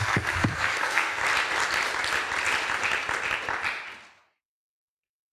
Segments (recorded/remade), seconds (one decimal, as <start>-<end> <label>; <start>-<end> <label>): 0.0-1.2 remade; 1.2-4.4 recorded; 4.4-5.3 remade